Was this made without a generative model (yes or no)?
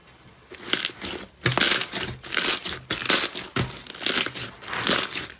yes